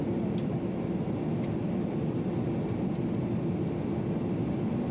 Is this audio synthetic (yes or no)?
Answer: no